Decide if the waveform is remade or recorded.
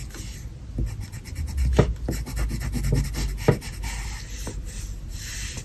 recorded